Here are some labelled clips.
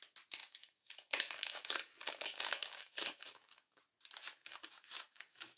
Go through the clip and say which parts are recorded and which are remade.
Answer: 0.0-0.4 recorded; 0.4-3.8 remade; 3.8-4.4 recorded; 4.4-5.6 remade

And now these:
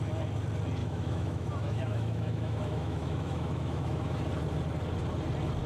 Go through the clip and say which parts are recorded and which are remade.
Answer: 0.0-0.8 recorded; 0.8-4.2 remade; 4.2-5.7 recorded

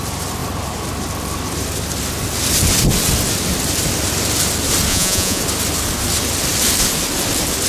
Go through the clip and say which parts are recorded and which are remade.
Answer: 0.0-4.9 recorded; 4.9-5.4 remade; 5.4-7.7 recorded

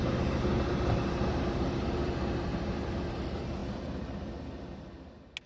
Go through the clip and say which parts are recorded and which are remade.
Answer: 0.0-5.5 recorded

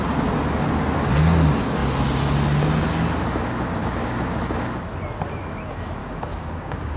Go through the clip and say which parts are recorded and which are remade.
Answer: 0.0-3.8 recorded; 3.8-4.4 remade; 4.4-6.0 recorded; 6.0-7.0 remade

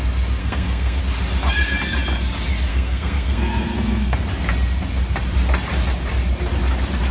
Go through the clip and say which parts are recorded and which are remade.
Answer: 0.0-0.4 recorded; 0.4-1.0 remade; 1.0-2.7 recorded; 2.7-4.2 remade; 4.2-7.1 recorded

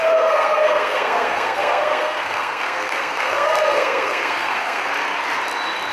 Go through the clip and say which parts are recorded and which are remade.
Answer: 0.0-4.9 remade; 4.9-5.9 recorded

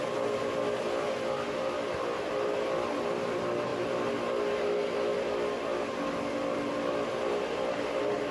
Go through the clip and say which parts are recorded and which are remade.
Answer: 0.0-8.3 recorded